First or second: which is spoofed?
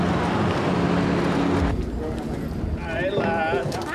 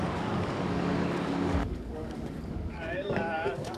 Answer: second